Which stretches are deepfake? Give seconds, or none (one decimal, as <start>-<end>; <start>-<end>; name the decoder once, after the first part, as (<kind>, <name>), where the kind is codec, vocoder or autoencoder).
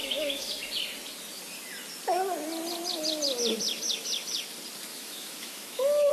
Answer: 0.0-0.7 (autoencoder, DAC-VAE); 4.9-6.1